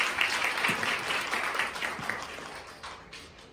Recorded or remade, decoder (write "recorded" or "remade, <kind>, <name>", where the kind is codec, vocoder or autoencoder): recorded